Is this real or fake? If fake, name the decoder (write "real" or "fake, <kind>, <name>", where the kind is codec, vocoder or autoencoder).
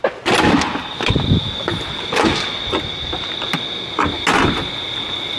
real